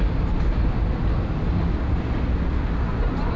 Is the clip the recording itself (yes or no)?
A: yes